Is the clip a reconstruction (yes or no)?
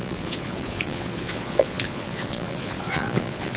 yes